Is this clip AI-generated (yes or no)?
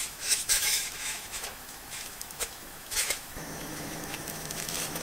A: yes